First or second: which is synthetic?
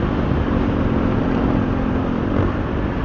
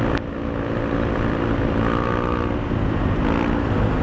first